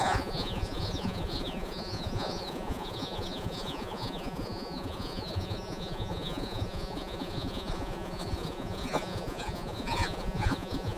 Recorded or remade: remade